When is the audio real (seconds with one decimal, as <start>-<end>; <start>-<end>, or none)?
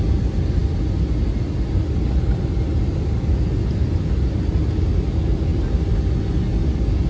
0.0-7.1